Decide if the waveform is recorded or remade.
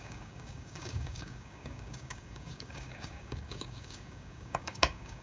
remade